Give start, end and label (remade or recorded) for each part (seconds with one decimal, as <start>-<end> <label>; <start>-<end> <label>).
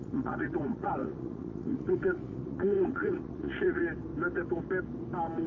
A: 0.0-3.8 remade; 3.8-5.5 recorded